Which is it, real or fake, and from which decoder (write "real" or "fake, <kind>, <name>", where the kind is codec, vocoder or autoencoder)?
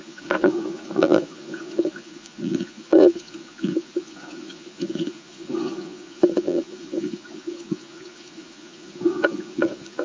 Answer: fake, vocoder, Vocos